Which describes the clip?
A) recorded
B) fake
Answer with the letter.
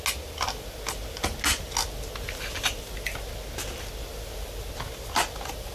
A